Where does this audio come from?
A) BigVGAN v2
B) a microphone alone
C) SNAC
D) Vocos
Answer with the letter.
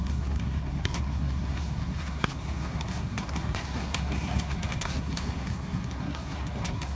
C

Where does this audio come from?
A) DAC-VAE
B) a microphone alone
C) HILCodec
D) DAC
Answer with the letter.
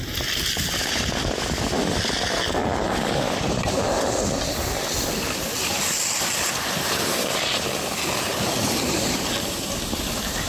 B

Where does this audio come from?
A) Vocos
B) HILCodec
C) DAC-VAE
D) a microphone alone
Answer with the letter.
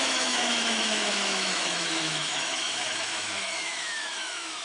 C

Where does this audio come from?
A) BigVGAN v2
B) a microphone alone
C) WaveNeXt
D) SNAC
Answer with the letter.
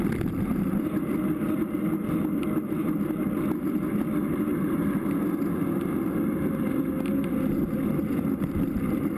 B